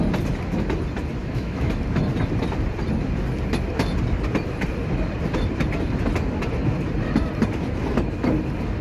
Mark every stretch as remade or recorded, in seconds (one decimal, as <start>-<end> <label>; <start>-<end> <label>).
0.0-1.2 recorded; 1.2-1.7 remade; 1.7-8.8 recorded